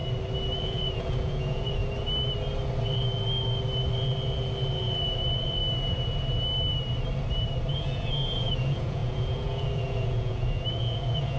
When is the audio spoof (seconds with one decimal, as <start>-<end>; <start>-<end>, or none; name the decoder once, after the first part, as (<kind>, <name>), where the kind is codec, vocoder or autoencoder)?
0.6-1.8 (vocoder, Vocos); 4.7-5.6; 7.7-11.4